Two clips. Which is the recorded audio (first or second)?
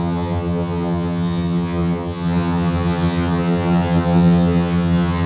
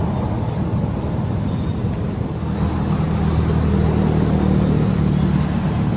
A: second